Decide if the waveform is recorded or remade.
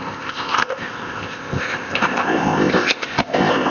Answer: remade